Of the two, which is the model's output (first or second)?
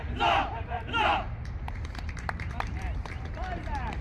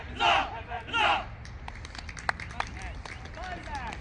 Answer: first